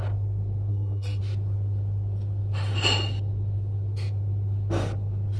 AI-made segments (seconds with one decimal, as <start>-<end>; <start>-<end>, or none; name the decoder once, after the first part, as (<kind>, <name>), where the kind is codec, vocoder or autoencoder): 0.7-1.2 (codec, SNAC)